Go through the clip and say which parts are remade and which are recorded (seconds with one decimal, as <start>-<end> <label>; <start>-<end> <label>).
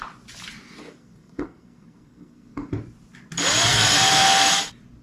0.0-0.8 recorded; 0.8-2.7 remade; 2.7-3.7 recorded; 3.7-4.6 remade; 4.6-5.0 recorded